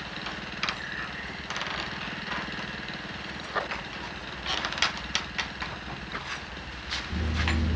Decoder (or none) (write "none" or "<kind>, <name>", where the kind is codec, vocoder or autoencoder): none